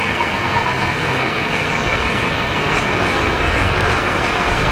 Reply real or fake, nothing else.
fake